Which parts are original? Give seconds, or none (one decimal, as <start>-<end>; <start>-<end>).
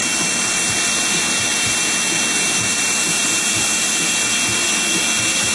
0.0-5.5